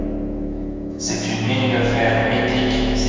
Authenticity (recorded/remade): remade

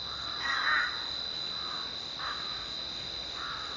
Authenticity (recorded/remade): recorded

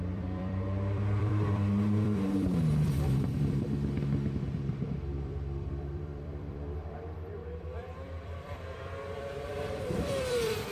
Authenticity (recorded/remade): remade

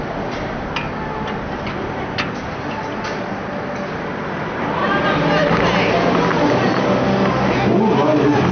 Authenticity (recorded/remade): recorded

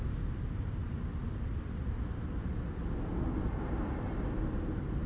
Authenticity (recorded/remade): recorded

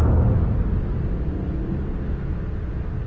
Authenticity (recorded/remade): recorded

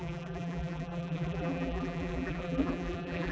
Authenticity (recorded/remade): remade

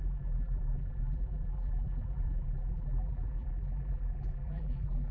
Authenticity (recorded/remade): remade